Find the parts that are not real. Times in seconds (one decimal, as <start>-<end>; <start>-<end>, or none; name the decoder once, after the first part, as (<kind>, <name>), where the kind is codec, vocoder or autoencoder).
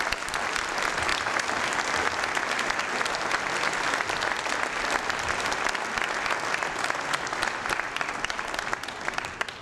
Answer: none